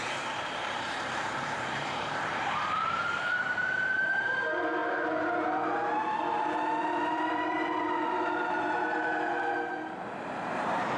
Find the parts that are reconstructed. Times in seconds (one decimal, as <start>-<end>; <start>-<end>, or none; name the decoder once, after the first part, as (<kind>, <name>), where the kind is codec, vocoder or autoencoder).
0.0-11.0 (vocoder, BigVGAN v2)

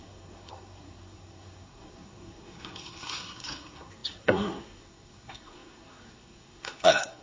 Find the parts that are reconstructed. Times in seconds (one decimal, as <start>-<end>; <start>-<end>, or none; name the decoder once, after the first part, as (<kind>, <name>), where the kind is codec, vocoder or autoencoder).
0.0-7.2 (codec, SNAC)

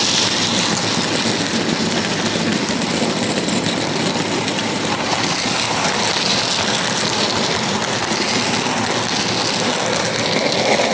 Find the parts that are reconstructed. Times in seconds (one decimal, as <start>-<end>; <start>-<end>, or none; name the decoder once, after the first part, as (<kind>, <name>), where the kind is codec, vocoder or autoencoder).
2.5-7.6 (vocoder, BigVGAN v2)

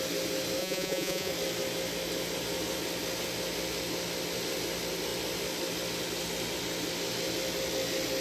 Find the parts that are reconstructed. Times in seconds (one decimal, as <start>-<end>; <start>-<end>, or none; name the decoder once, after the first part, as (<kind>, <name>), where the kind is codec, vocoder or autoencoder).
0.6-1.3 (vocoder, Vocos)